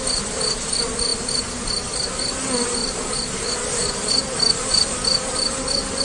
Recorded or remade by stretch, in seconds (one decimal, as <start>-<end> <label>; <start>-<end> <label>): 0.0-2.8 recorded; 2.8-3.5 remade; 3.5-4.2 recorded; 4.2-4.9 remade; 4.9-6.0 recorded